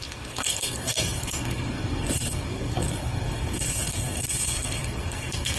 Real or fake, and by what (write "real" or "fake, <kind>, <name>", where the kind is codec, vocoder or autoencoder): fake, codec, SNAC